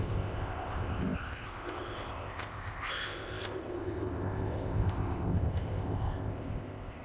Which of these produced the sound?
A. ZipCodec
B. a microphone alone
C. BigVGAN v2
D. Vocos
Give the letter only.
A